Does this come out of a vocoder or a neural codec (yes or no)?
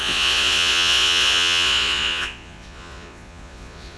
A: yes